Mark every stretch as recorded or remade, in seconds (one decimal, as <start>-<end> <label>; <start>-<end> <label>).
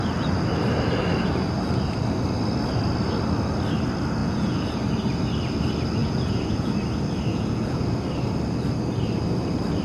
0.0-4.2 recorded; 4.2-4.8 remade; 4.8-6.0 recorded; 6.0-6.7 remade; 6.7-7.3 recorded; 7.3-7.8 remade; 7.8-9.8 recorded